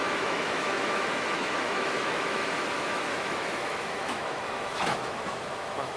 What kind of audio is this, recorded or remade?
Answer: remade